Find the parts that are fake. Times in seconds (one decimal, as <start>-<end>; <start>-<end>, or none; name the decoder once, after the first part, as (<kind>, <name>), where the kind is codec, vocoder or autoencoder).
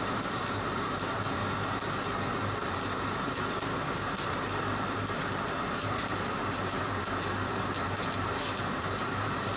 0.0-1.4 (vocoder, BigVGAN v2); 2.6-9.6